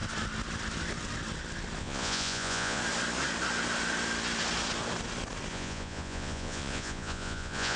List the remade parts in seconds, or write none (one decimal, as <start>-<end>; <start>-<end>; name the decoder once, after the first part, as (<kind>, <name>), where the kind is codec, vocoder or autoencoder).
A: 1.8-2.8 (vocoder, Vocos); 5.5-7.8